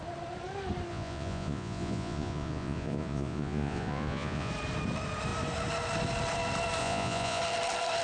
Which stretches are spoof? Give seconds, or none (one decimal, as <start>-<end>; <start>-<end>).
0.9-4.5; 6.8-7.4